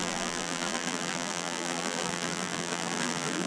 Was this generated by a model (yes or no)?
yes